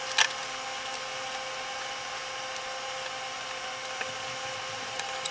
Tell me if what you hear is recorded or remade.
recorded